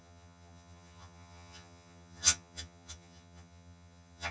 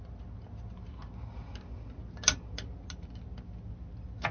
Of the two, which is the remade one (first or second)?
first